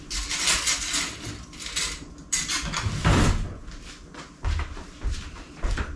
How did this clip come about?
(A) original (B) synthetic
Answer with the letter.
A